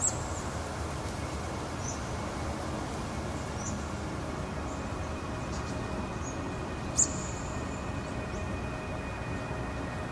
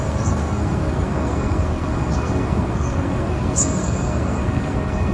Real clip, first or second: first